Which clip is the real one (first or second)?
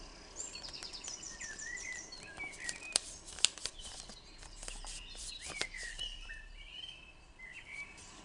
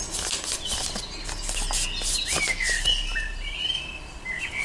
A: second